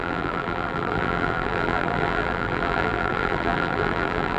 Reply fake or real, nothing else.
fake